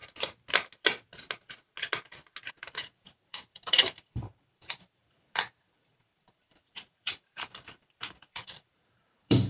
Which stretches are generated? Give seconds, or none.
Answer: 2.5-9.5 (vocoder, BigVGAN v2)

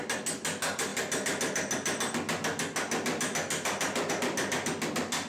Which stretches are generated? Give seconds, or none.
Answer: none

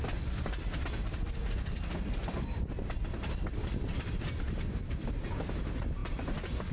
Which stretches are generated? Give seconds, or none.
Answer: none

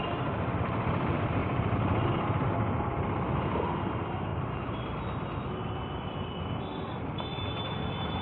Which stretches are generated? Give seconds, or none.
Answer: 0.0-1.4 (vocoder, BigVGAN v2); 2.8-4.3; 5.8-8.2

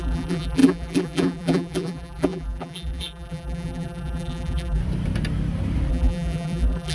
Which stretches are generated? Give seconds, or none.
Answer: 0.0-4.8 (vocoder, BigVGAN v2); 5.9-6.9

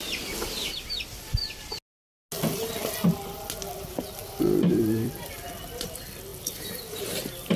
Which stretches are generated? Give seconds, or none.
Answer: 4.2-5.5 (vocoder, BigVGAN v2); 6.3-7.6